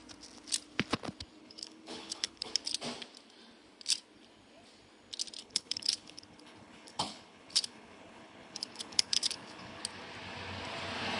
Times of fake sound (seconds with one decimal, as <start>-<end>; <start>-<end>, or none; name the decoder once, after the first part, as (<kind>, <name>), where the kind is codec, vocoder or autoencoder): 1.4-2.5 (codec, HILCodec); 5.4-9.8